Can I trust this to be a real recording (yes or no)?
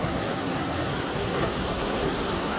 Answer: no